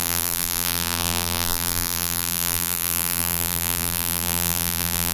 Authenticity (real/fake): fake